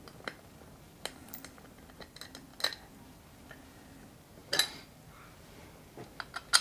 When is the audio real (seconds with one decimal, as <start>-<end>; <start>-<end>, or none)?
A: 0.0-6.6

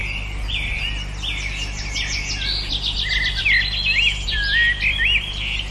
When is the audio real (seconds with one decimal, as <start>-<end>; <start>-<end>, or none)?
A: 0.0-5.7

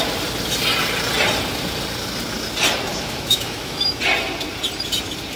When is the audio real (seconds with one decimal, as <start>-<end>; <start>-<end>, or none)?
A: 0.0-2.9; 4.0-5.4

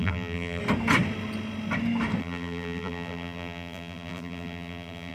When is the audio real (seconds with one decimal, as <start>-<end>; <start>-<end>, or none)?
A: 0.6-2.2